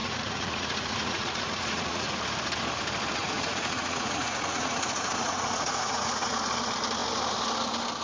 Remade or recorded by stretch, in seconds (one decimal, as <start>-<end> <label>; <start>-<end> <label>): 0.0-2.2 remade; 2.2-3.2 recorded; 3.2-6.4 remade; 6.4-8.0 recorded